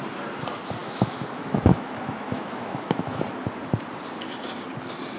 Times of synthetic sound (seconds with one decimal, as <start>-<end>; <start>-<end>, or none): 0.8-3.2